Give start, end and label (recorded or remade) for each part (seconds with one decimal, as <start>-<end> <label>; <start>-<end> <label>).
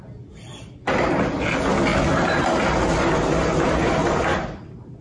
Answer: 0.0-5.0 recorded